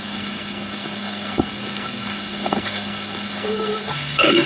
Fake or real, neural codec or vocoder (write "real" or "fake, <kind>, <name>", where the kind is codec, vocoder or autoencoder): fake, codec, SNAC